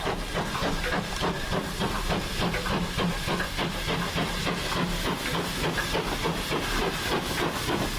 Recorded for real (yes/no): yes